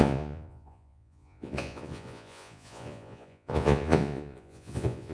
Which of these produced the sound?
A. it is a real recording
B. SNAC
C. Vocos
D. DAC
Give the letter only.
C